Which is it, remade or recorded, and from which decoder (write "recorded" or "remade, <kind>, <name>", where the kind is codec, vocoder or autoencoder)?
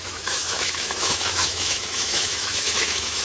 remade, autoencoder, DAC-VAE